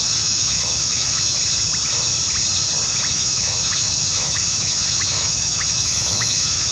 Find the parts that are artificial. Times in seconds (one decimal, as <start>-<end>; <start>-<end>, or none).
0.0-1.4; 3.1-6.7